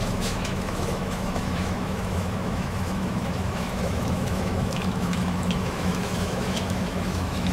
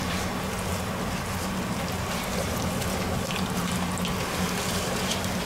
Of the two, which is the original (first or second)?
second